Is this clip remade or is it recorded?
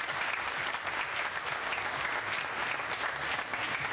recorded